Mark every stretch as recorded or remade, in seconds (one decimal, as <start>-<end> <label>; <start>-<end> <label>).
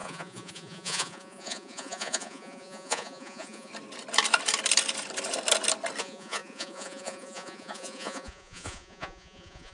0.0-3.7 remade; 3.7-6.0 recorded; 6.0-9.7 remade